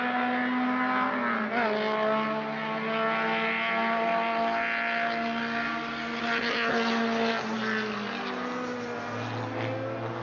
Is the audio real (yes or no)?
yes